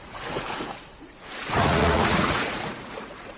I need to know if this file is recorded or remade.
remade